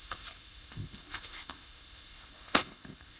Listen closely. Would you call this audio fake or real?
fake